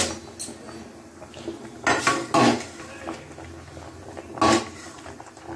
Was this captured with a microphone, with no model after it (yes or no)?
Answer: yes